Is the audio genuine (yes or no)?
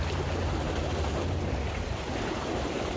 yes